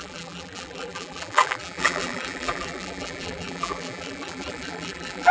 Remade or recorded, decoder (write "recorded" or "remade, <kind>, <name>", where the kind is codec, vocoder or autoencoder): remade, vocoder, BigVGAN v2